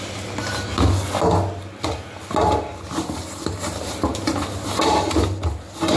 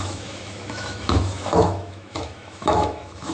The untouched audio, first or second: first